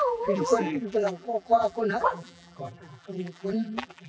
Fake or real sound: fake